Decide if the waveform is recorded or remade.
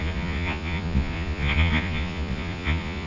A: remade